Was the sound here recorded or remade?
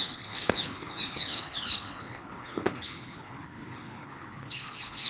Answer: remade